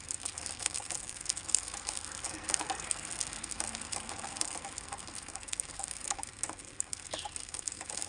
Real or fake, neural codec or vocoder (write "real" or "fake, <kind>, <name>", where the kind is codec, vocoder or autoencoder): fake, codec, SNAC